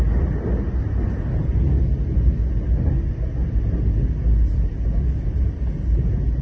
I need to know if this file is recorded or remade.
recorded